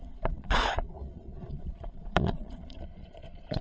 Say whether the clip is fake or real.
fake